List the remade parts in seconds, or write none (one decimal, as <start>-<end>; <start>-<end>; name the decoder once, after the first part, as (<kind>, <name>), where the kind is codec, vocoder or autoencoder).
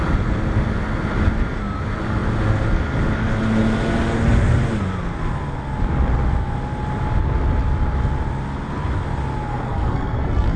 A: 9.5-10.6 (codec, SNAC)